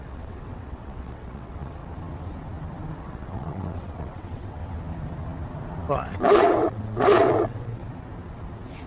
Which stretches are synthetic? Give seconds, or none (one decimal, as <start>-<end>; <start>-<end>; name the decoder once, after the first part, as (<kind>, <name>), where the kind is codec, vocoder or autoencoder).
0.0-1.8 (vocoder, WaveNeXt); 3.0-4.6; 5.9-7.8